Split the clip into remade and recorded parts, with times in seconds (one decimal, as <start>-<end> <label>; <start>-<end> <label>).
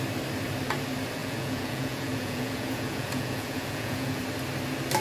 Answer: 0.0-1.2 recorded; 1.2-4.2 remade; 4.2-5.0 recorded